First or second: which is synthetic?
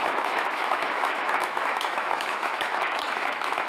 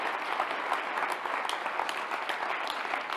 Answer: first